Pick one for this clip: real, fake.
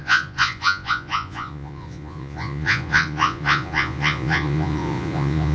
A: fake